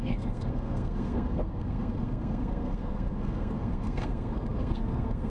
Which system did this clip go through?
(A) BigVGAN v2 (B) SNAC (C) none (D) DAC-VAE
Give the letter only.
B